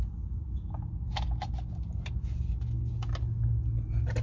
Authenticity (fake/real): real